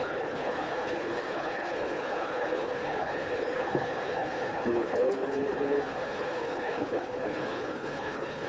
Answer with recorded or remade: remade